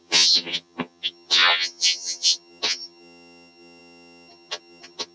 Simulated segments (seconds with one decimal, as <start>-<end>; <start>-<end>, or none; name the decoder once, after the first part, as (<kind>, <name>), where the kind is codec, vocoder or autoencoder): 0.0-5.1 (vocoder, HiFi-GAN)